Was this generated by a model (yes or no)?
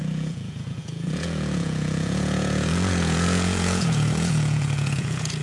yes